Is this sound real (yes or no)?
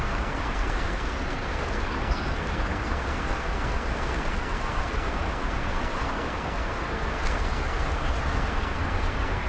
no